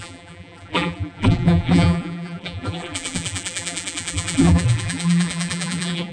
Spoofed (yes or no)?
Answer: yes